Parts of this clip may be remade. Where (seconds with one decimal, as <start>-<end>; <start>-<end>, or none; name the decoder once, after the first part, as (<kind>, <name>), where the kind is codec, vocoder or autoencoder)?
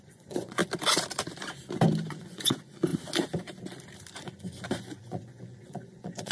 0.0-0.6 (vocoder, Vocos); 2.1-2.9; 4.1-6.3